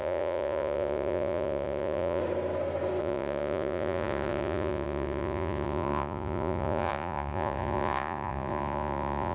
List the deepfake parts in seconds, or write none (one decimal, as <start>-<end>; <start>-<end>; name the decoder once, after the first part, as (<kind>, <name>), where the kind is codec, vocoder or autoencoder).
0.0-2.2 (vocoder, Vocos); 3.0-9.3